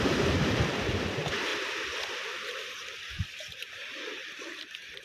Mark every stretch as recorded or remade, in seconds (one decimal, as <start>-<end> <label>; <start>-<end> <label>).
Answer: 0.0-5.0 remade